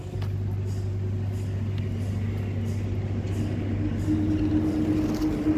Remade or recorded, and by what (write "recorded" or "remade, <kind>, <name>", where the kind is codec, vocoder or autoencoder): recorded